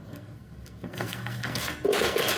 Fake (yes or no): yes